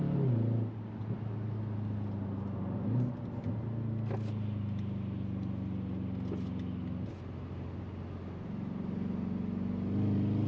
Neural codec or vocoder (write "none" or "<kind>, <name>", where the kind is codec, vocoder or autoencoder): none